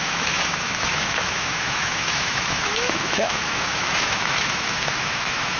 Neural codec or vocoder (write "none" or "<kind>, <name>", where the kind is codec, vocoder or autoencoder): autoencoder, DAC-VAE